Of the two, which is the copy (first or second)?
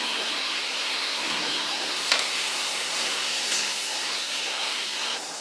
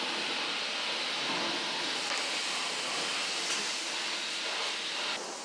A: first